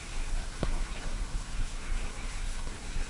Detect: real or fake fake